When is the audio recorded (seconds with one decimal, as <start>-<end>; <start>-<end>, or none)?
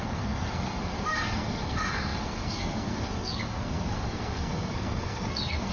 none